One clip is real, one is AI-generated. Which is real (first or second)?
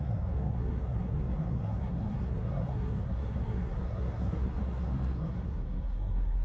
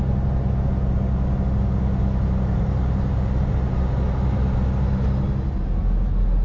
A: second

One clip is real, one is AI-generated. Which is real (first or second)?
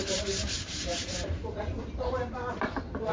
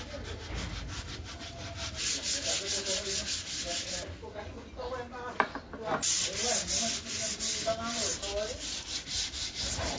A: second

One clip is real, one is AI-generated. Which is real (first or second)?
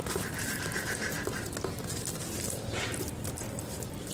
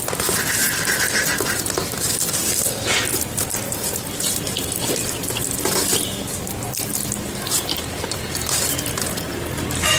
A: second